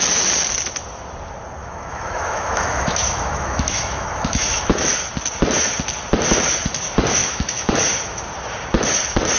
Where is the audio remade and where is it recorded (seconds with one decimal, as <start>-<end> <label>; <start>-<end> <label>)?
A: 0.0-1.6 recorded; 1.6-4.9 remade; 4.9-7.2 recorded; 7.2-7.7 remade; 7.7-9.4 recorded